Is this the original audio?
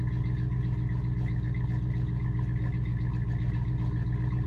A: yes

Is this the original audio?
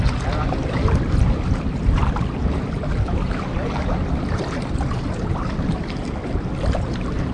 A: yes